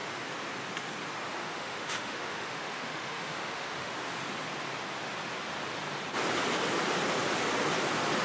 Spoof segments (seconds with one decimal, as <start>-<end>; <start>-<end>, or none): 1.4-3.9